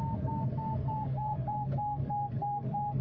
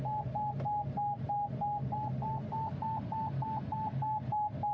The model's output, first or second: first